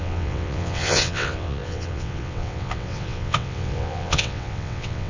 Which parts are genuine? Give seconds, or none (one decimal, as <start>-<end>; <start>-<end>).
none